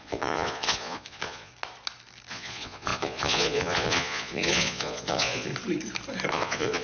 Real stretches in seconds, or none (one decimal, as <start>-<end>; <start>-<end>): 1.5-2.3; 5.5-6.3